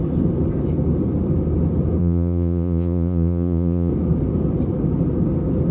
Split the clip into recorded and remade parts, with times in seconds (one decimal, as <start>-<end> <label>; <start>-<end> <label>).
0.0-2.0 recorded; 2.0-3.9 remade; 3.9-5.7 recorded